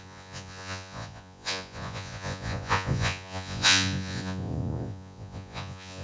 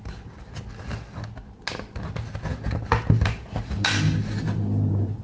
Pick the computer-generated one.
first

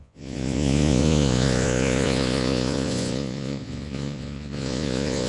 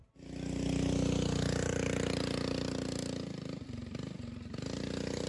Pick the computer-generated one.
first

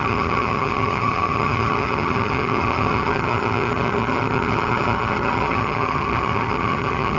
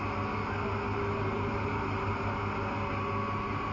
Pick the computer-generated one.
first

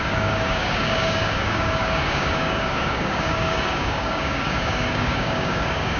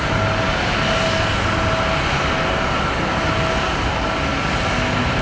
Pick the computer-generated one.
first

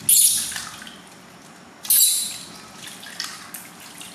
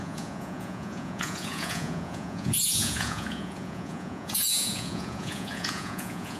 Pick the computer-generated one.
second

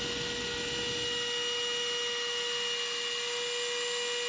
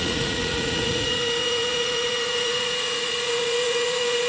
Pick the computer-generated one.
second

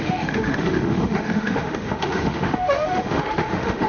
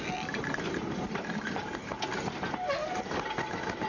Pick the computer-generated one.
first